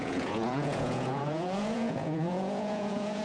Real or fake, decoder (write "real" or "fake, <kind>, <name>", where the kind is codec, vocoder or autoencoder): fake, vocoder, Vocos